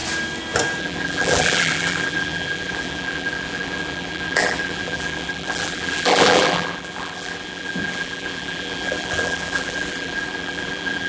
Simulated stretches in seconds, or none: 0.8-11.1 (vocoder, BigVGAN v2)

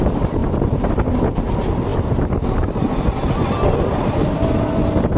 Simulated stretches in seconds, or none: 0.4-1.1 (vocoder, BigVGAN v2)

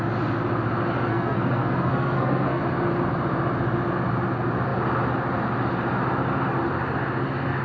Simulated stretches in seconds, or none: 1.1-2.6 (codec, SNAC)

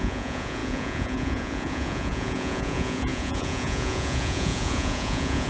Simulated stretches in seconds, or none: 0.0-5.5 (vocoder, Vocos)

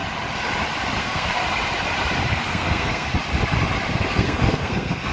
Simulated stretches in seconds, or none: 1.0-1.4 (codec, SNAC); 2.3-3.1; 4.1-5.1

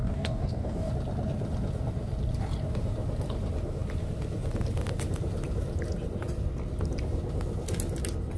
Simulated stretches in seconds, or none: 0.0-0.9 (codec, DAC)